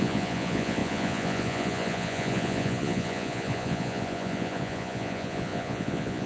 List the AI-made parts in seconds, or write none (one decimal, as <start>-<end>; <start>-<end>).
0.0-6.3